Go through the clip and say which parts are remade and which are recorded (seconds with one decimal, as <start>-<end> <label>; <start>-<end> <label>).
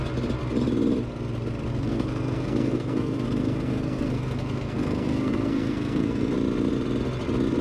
0.0-1.7 recorded; 1.7-6.3 remade; 6.3-7.6 recorded